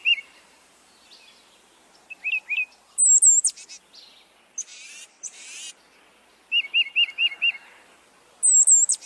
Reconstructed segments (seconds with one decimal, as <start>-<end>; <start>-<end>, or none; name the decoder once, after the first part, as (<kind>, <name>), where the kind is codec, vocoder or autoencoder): 0.0-1.1 (vocoder, BigVGAN v2); 4.7-5.6; 7.2-8.1